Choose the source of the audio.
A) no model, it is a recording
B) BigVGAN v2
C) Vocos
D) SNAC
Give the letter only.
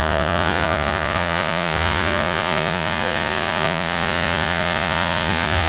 C